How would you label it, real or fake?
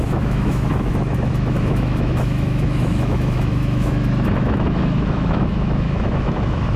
fake